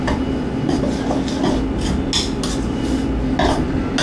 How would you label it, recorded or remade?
recorded